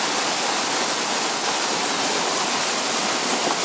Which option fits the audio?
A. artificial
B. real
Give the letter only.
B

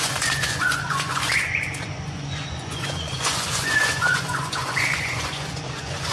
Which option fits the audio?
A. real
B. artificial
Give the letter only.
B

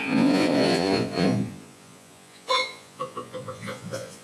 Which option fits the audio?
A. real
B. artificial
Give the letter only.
B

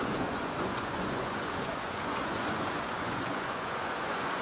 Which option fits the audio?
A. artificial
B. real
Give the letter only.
A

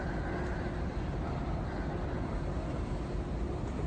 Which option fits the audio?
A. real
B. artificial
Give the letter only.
A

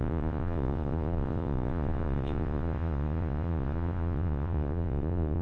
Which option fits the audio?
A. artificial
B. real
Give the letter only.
A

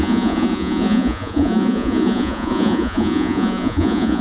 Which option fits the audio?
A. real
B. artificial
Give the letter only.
B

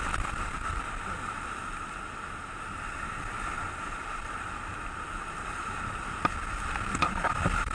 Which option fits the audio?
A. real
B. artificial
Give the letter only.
A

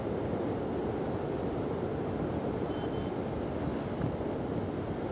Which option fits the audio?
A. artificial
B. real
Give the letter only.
B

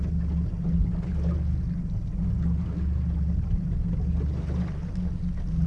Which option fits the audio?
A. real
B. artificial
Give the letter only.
A